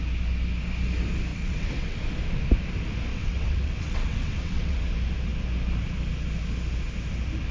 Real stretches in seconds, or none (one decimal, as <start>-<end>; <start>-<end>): 0.0-1.3; 2.0-3.1; 4.8-7.5